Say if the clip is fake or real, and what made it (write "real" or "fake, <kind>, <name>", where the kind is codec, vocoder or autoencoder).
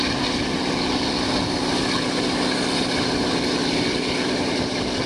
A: real